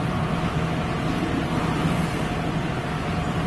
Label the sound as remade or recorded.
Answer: recorded